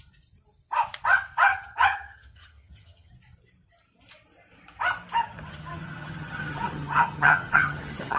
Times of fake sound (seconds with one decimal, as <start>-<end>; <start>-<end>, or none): 1.5-3.1; 5.2-8.2